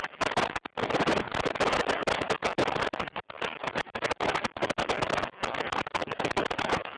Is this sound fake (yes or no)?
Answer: yes